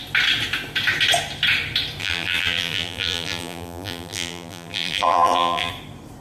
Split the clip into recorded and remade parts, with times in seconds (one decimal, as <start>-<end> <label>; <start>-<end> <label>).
0.0-2.0 recorded; 2.0-5.7 remade; 5.7-6.2 recorded